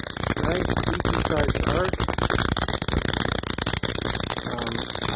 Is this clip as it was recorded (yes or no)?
yes